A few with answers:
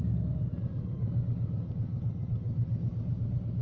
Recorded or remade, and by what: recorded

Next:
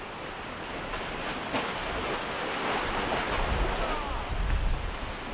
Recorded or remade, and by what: recorded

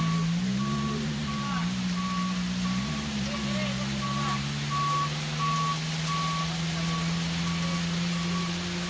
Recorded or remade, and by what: recorded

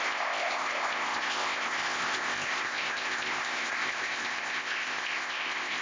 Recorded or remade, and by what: remade, codec, ZipCodec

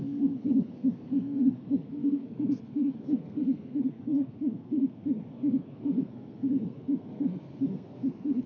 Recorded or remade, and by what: remade, codec, SNAC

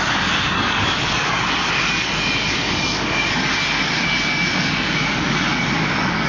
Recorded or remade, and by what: remade, codec, DAC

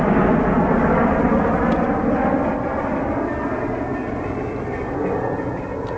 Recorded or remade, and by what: recorded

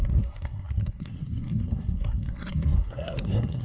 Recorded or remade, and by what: remade, codec, SNAC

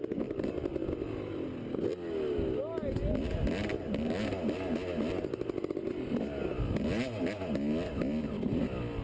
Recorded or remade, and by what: recorded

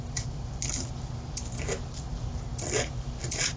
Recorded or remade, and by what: recorded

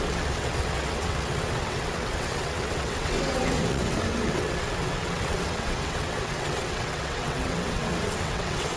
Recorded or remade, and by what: remade, vocoder, WaveNeXt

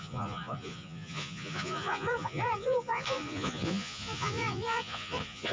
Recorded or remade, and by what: remade, vocoder, Vocos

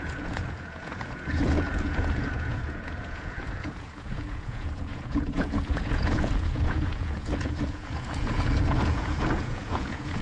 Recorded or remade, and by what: remade, vocoder, Vocos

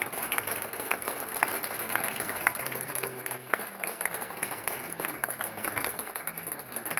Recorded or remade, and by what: remade, codec, SNAC